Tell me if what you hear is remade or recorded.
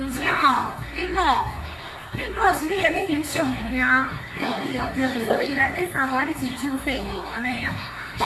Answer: remade